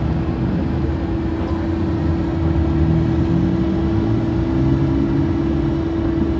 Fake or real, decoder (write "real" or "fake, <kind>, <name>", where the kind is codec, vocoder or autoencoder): real